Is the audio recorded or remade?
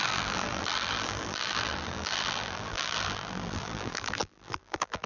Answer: remade